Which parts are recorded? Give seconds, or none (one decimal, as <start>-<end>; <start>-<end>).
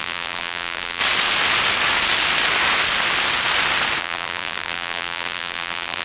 1.0-4.0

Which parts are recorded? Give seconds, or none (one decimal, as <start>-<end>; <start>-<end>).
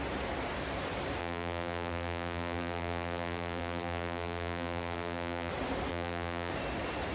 0.0-1.2; 5.5-5.9; 6.5-7.1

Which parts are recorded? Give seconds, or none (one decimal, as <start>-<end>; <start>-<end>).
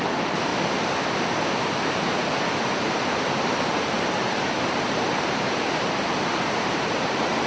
0.5-1.8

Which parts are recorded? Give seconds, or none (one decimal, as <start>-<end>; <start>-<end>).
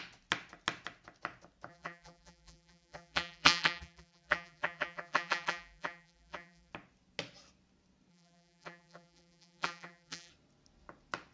0.0-1.7; 6.7-8.1; 10.3-11.3